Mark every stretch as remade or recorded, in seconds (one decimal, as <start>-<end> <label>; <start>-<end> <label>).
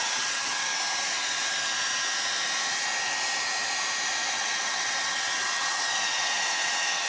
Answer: 0.0-0.7 remade; 0.7-4.3 recorded; 4.3-7.1 remade